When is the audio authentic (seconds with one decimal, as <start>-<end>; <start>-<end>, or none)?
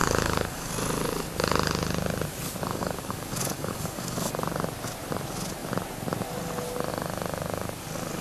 0.7-2.7; 4.3-8.2